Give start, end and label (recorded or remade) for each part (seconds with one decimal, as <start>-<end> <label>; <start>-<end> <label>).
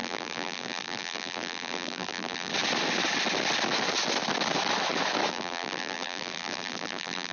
0.0-2.5 remade; 2.5-5.3 recorded; 5.3-7.3 remade